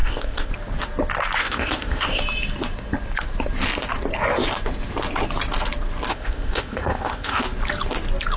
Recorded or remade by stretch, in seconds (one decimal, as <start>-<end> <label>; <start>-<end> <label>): 0.0-0.5 remade; 0.5-1.4 recorded; 1.4-2.2 remade; 2.2-6.1 recorded; 6.1-7.4 remade; 7.4-8.4 recorded